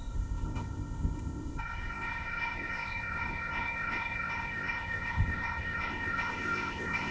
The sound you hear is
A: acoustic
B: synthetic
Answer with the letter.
B